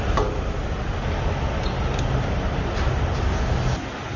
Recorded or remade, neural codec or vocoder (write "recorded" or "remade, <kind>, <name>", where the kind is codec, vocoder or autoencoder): recorded